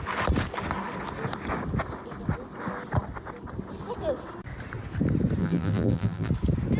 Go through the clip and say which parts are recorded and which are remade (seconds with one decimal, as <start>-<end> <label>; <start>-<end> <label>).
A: 0.0-5.4 recorded; 5.4-6.3 remade; 6.3-6.8 recorded